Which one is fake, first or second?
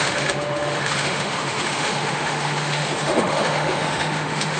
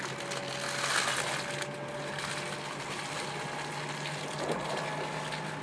first